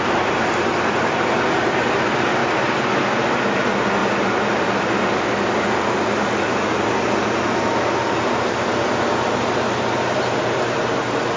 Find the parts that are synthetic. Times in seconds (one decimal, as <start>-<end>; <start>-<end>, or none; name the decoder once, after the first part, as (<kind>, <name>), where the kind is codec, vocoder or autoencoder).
none

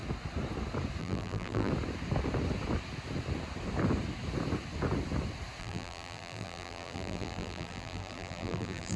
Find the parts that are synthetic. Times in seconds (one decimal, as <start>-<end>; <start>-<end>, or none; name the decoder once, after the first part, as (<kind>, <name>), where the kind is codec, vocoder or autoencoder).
1.0-1.7 (vocoder, BigVGAN v2); 5.6-9.0